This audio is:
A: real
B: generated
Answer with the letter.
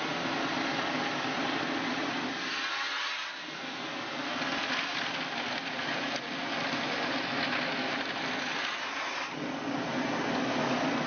A